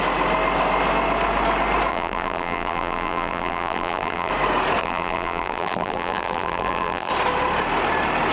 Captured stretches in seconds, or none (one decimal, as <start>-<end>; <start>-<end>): 0.0-1.9; 4.3-4.8; 7.1-8.3